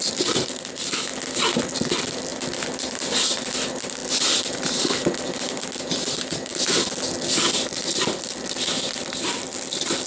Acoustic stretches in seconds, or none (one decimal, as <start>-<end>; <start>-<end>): 0.0-2.3; 3.5-6.5; 9.5-10.1